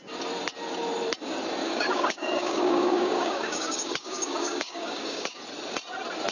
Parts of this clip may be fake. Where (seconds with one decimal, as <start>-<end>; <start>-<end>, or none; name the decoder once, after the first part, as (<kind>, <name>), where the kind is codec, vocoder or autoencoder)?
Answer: 1.6-5.4 (codec, DAC)